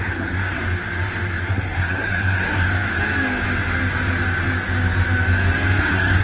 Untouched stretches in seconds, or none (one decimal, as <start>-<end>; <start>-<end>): 0.6-1.5; 2.7-5.8